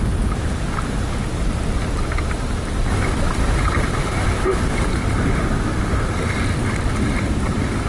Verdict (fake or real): real